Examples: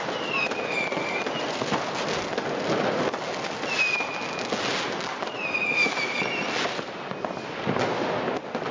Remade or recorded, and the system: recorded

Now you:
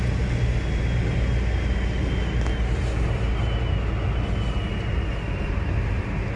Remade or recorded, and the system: recorded